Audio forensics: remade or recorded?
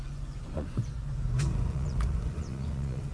remade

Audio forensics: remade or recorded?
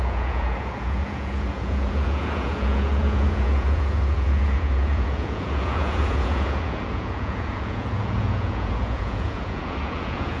remade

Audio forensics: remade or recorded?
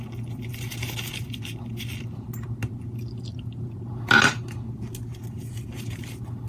recorded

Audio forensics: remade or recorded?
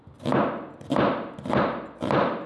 recorded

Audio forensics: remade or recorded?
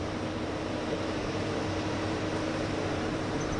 remade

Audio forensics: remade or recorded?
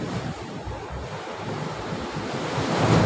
remade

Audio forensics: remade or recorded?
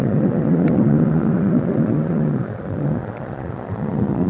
remade